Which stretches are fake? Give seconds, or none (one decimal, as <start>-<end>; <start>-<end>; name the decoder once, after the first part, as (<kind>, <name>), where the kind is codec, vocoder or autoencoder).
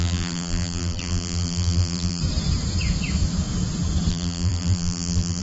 0.0-2.2 (vocoder, BigVGAN v2); 4.1-5.4